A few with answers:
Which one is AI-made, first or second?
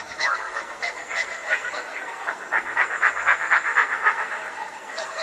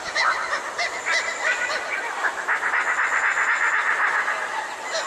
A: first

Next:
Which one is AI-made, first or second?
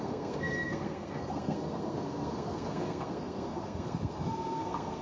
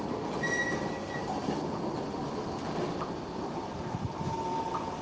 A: first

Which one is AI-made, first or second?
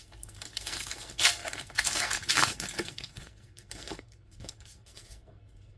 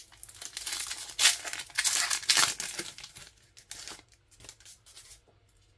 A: first